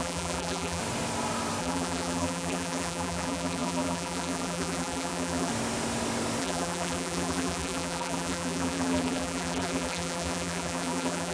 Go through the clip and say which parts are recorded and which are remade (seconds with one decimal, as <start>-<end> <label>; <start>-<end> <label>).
0.0-0.8 remade; 0.8-1.6 recorded; 1.6-5.5 remade; 5.5-6.4 recorded; 6.4-11.3 remade